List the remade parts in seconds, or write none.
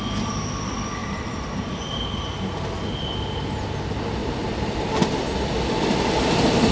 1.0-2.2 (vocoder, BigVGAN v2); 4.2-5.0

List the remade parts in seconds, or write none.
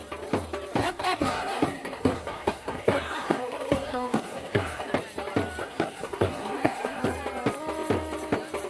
0.8-4.9 (codec, SNAC); 5.6-7.0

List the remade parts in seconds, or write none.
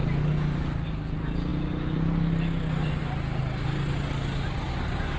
none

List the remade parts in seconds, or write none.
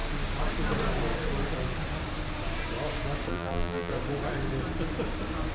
3.3-3.9 (vocoder, BigVGAN v2)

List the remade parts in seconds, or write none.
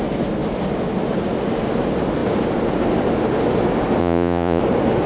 4.0-4.6 (vocoder, Vocos)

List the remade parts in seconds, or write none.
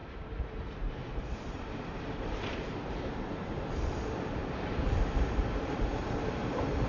0.0-6.9 (vocoder, BigVGAN v2)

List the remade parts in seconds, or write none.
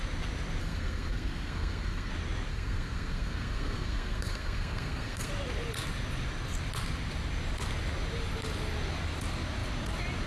0.6-2.1 (codec, SNAC); 2.5-5.3